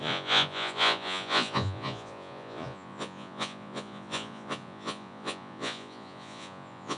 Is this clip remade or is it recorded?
remade